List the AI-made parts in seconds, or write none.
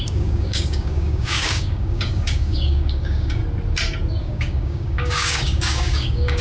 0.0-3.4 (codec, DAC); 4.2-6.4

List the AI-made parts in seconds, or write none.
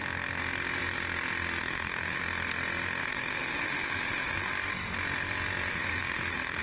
1.6-2.2 (autoencoder, DAC-VAE); 3.0-4.5; 5.7-6.6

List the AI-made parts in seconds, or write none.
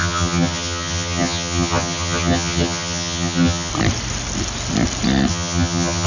0.0-3.7 (vocoder, HiFi-GAN); 5.3-6.1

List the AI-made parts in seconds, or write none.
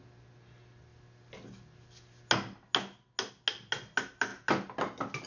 none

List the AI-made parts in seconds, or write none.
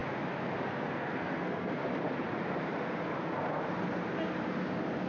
0.7-1.8 (codec, SNAC)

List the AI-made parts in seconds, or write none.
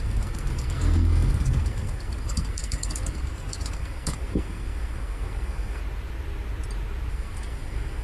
0.0-5.8 (codec, SNAC); 7.1-8.0